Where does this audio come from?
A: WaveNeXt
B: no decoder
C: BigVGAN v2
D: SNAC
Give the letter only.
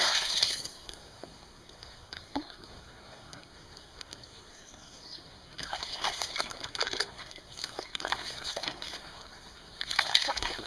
D